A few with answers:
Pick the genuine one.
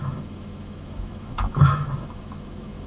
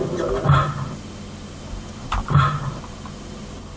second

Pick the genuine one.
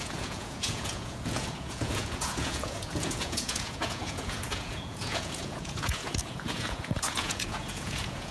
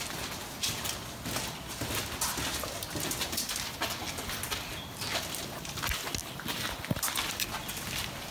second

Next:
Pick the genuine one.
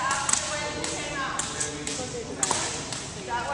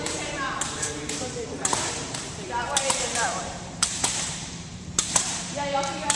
first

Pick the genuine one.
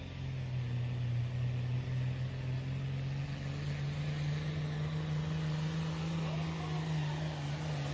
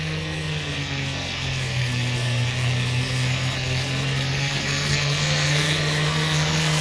first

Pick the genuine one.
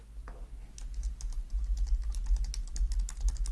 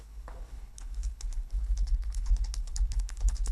first